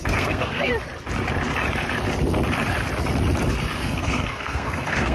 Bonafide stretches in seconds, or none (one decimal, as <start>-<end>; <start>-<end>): 0.7-3.8